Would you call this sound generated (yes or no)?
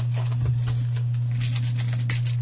no